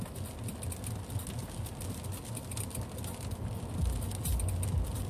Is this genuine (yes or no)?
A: yes